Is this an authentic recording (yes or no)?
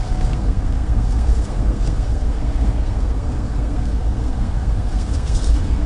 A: no